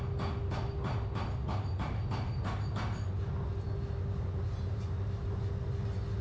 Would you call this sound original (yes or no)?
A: yes